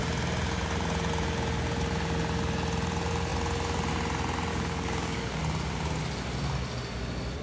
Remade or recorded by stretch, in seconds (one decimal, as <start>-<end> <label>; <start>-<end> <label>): 0.0-4.5 recorded; 4.5-5.4 remade; 5.4-7.4 recorded

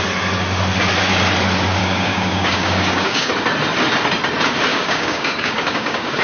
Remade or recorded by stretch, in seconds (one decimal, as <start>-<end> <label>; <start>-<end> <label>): 0.0-1.8 recorded; 1.8-3.3 remade; 3.3-4.7 recorded; 4.7-6.2 remade